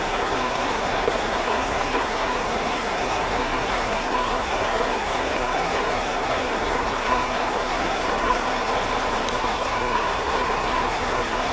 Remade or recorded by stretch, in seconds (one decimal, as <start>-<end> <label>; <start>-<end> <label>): 0.0-8.7 remade; 8.7-9.3 recorded; 9.3-11.5 remade